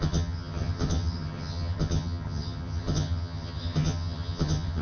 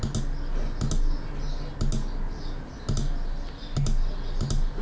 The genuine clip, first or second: second